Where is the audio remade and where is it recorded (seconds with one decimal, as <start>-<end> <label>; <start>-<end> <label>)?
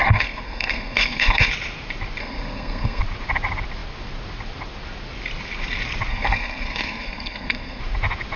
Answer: 0.0-1.5 remade; 1.5-2.2 recorded; 2.2-3.0 remade; 3.0-6.1 recorded; 6.1-7.8 remade; 7.8-8.4 recorded